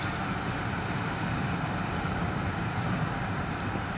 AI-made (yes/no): yes